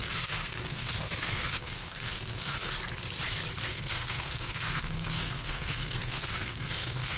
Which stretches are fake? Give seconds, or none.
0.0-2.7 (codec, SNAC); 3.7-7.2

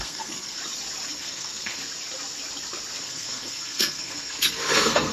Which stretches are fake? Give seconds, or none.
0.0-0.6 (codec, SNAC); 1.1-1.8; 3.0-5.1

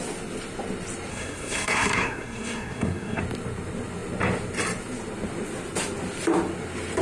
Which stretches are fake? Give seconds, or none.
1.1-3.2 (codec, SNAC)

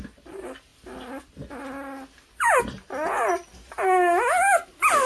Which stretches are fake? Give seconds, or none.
none